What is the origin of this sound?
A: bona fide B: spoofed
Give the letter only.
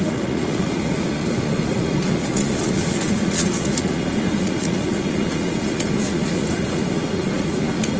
B